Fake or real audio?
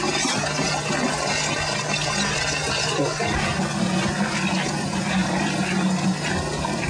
real